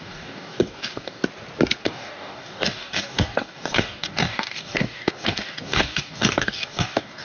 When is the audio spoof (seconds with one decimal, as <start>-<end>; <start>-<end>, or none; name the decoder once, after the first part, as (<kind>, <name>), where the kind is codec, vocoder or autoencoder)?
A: 0.0-1.2 (codec, DAC); 1.8-7.2